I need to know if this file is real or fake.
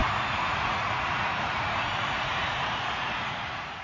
fake